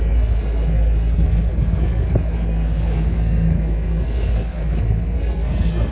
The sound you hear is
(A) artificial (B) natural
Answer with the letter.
A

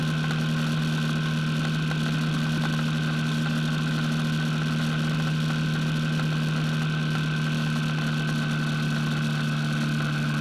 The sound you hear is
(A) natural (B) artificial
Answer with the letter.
A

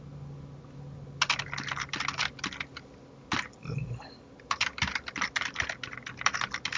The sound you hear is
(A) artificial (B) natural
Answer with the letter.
B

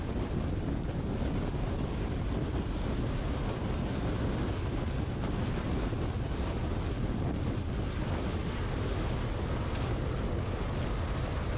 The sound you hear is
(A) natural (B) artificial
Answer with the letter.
A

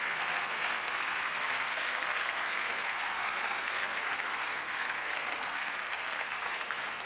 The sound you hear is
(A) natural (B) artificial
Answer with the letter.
B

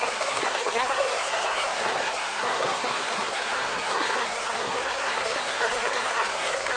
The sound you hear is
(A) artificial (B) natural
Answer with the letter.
A